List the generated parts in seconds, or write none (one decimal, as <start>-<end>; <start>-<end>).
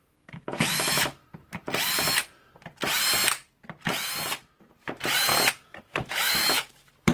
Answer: 0.0-1.2; 5.5-7.1